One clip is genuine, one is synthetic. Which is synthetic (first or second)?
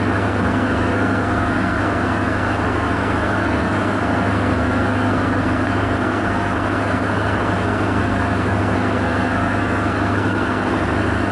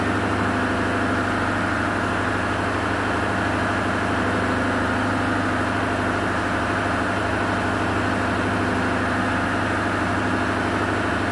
first